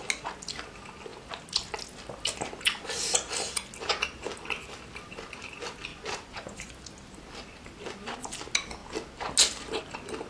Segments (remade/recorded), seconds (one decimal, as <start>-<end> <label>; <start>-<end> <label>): 0.0-5.9 recorded; 5.9-6.7 remade; 6.7-10.3 recorded